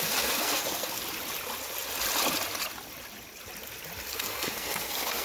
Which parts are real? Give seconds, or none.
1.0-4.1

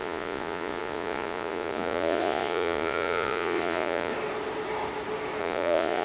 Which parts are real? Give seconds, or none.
4.1-5.4

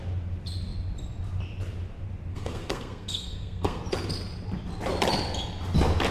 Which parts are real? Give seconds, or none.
0.0-2.3; 3.8-6.1